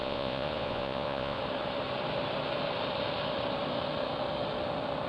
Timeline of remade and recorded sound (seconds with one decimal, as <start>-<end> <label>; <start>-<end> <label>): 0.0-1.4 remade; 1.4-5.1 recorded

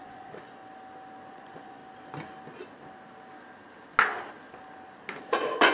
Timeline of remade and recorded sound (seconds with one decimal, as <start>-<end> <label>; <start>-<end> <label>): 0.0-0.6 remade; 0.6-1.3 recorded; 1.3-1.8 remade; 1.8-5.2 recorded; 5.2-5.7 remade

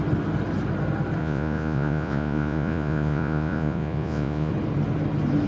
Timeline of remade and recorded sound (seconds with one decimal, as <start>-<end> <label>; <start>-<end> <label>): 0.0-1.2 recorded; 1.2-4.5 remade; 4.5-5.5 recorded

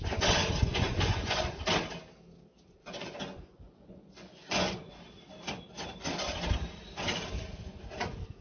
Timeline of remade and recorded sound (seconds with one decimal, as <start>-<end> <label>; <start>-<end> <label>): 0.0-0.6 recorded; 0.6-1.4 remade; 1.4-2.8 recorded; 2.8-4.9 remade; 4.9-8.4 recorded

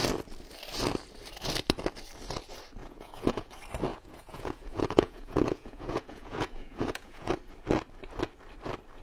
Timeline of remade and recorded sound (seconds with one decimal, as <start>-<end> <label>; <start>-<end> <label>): 0.0-2.8 recorded; 2.8-3.5 remade; 3.5-3.9 recorded; 3.9-7.3 remade; 7.3-9.0 recorded

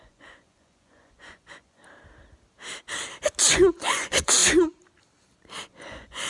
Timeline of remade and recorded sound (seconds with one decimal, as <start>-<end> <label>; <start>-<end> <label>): 0.0-1.8 remade; 1.8-3.5 recorded; 3.5-4.4 remade; 4.4-5.7 recorded; 5.7-6.3 remade